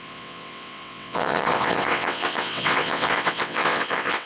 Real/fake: fake